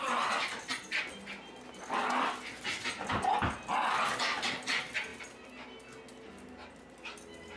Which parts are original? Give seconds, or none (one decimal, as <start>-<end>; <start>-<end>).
0.0-7.6